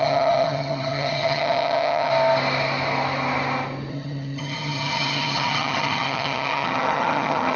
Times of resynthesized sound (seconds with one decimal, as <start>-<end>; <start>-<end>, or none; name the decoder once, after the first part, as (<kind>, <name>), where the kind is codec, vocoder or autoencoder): 0.0-2.1 (vocoder, HiFi-GAN); 3.9-7.6